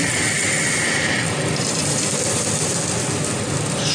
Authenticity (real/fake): real